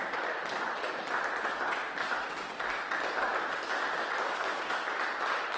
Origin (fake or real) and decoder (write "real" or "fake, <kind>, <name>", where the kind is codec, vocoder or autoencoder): real